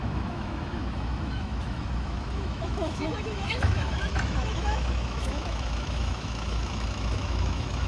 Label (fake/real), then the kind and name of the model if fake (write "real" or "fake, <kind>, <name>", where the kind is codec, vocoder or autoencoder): fake, autoencoder, DAC-VAE